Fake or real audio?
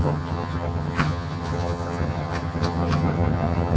fake